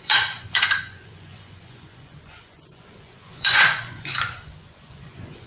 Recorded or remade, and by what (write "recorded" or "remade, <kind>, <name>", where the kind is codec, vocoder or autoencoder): remade, vocoder, Vocos